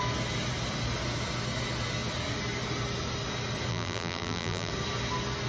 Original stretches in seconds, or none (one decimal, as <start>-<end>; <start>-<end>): 0.0-3.7; 4.7-5.5